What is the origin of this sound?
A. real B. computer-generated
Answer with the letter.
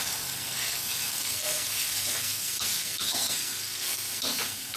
B